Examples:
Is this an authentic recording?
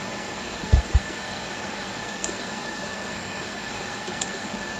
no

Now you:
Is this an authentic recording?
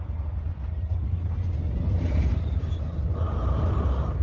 no